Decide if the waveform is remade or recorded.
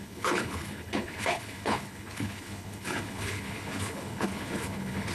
remade